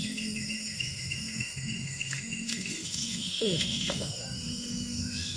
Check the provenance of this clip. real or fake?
fake